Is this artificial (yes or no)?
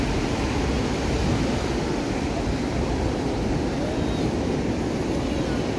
no